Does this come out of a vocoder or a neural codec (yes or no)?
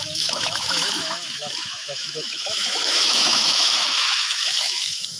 yes